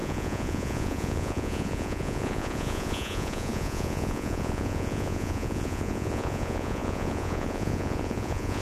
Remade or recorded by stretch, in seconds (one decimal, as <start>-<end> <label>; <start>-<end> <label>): 0.0-8.6 remade